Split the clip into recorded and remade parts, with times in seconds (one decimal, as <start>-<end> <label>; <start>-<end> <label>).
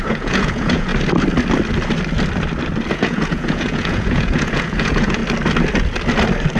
0.0-0.9 remade; 0.9-2.9 recorded; 2.9-5.2 remade; 5.2-6.6 recorded